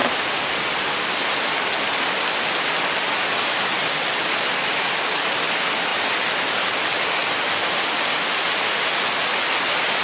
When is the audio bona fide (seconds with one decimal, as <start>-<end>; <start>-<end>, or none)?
1.2-10.0

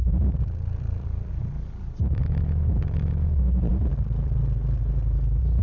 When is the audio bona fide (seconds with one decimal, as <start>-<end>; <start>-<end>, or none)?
1.3-3.7; 4.4-5.6

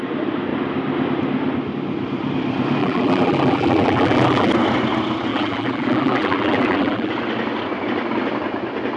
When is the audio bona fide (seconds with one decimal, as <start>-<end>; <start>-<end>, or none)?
0.0-2.8; 4.5-5.3; 7.1-9.0

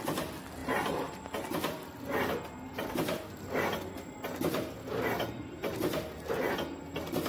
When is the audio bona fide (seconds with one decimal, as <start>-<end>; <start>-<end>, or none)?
0.0-0.6; 1.1-2.7; 3.2-4.9; 5.8-7.3

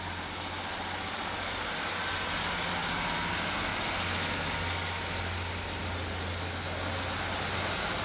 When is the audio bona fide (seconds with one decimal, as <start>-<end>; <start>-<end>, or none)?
0.0-8.0

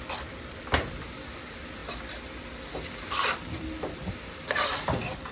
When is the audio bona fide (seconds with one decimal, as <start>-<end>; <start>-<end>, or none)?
1.8-3.1